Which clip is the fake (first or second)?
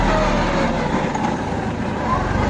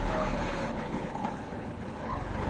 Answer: second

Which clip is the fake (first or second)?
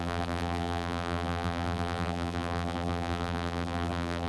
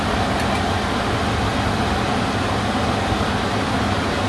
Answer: first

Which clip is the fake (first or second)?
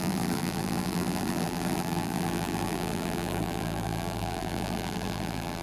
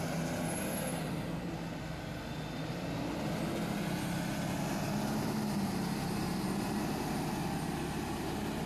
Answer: first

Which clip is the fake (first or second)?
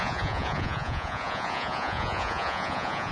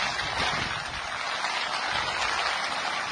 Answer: first